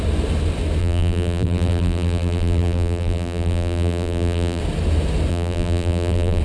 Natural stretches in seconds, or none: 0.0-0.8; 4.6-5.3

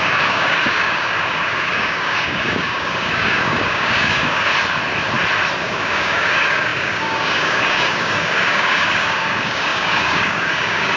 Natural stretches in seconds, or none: 4.5-5.6